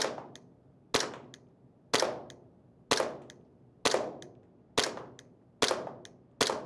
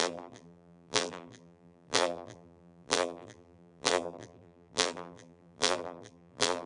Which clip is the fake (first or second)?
second